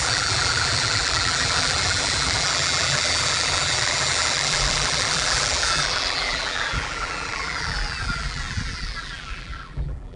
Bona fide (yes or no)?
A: no